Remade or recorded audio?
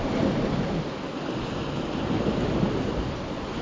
recorded